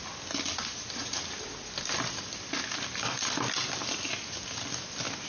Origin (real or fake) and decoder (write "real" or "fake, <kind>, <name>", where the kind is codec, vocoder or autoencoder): real